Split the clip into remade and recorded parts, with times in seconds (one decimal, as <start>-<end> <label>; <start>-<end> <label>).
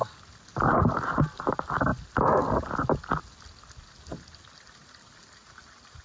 0.0-6.0 recorded